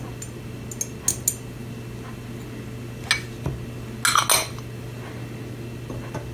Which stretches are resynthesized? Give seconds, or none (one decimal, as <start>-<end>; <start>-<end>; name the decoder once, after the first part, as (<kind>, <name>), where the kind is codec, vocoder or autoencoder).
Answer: none